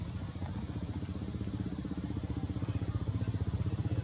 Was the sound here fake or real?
real